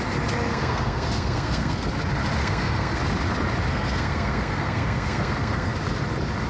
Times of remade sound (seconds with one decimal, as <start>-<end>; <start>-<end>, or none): 0.5-1.9; 2.4-3.0; 3.7-5.7